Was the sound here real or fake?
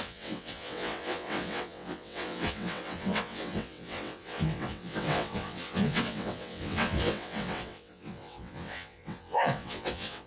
fake